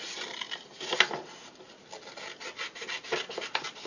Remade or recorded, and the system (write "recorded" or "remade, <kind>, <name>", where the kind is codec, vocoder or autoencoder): recorded